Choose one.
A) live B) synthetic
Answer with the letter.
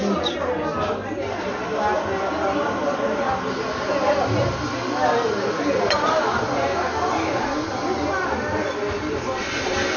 A